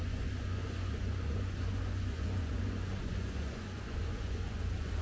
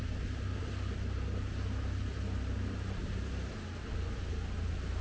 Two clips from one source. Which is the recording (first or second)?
second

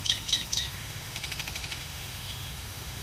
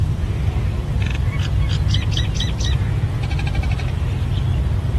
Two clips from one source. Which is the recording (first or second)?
second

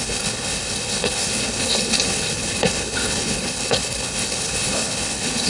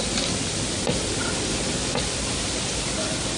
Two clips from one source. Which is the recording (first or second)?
second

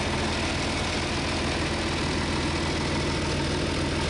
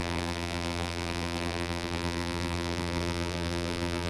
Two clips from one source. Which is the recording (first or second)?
first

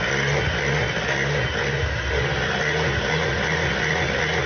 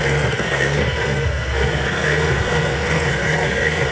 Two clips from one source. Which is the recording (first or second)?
first